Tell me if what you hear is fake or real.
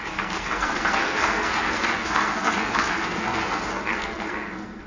fake